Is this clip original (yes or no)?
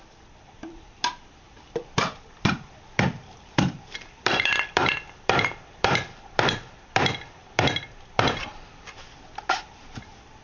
no